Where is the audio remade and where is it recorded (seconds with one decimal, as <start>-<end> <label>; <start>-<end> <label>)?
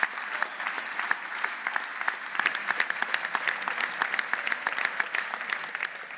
0.0-6.2 recorded